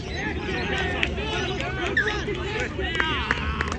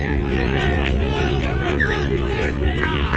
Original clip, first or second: first